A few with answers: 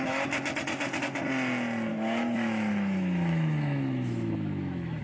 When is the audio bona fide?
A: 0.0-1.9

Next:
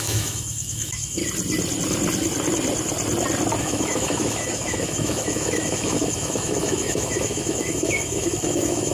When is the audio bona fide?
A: 1.2-3.6